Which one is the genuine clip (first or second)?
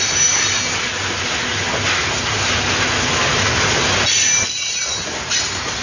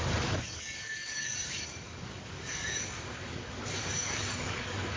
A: first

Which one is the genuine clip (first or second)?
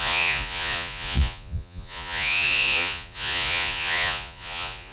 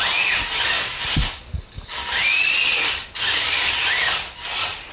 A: second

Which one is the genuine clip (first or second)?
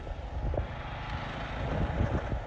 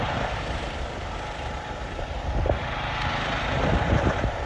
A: first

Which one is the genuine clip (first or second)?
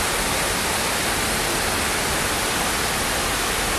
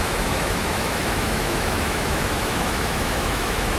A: first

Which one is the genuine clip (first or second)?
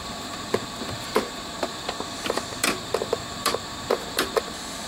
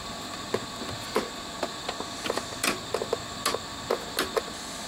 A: second